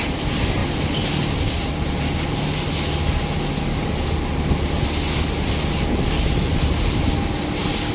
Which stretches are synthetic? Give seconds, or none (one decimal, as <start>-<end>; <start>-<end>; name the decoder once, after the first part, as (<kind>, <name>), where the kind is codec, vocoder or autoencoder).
none